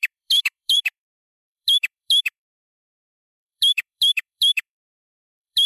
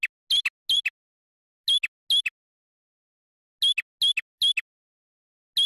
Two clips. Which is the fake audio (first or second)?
first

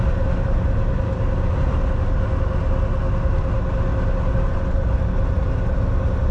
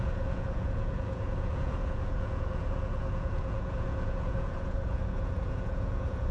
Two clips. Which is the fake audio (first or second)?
second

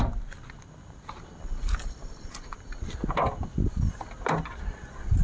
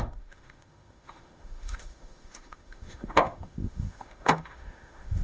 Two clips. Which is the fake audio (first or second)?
second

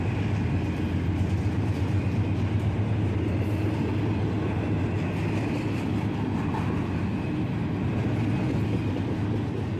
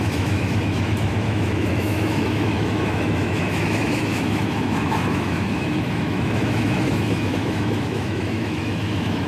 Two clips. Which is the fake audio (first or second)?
second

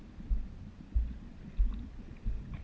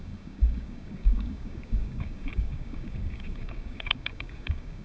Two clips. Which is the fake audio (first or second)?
second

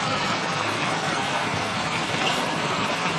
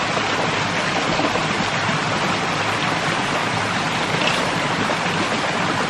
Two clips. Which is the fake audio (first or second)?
first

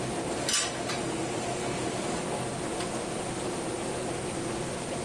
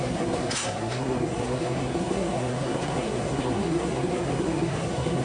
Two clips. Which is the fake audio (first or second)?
second